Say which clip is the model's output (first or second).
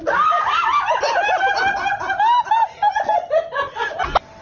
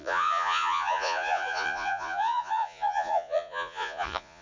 second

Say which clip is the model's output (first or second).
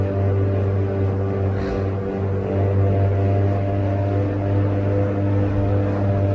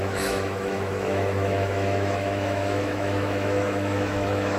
second